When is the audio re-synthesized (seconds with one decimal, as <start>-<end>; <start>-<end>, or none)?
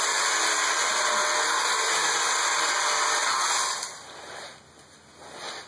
none